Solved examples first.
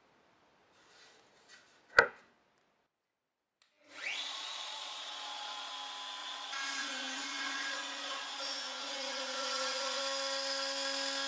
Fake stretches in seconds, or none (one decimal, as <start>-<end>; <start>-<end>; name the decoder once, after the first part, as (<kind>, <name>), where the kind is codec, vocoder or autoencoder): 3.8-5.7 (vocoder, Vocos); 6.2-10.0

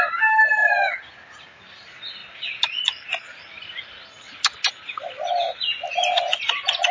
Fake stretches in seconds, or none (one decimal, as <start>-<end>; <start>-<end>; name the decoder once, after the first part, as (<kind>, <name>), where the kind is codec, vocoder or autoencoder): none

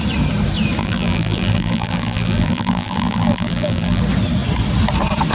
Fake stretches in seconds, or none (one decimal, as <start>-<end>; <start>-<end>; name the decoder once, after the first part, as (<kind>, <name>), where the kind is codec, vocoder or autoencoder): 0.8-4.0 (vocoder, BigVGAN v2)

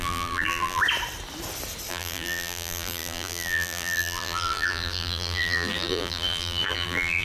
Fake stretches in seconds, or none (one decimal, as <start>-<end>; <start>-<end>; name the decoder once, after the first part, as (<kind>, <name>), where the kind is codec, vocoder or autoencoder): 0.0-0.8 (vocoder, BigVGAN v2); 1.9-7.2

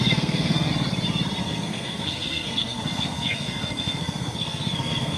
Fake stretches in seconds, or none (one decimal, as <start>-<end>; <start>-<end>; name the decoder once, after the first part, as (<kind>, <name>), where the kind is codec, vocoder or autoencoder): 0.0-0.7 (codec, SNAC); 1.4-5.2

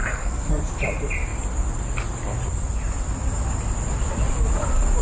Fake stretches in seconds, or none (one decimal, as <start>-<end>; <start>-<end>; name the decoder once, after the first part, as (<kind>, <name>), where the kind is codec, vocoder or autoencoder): 0.0-0.6 (codec, SNAC)

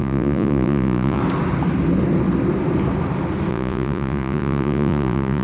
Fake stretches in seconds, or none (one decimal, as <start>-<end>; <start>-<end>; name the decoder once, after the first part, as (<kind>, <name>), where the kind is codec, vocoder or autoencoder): 0.0-1.2 (vocoder, Vocos); 3.5-5.4